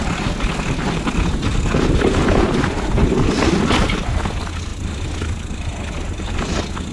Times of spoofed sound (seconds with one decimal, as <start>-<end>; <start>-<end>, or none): none